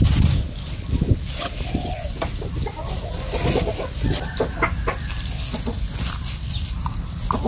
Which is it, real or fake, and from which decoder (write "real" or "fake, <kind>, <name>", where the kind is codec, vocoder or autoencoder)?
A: real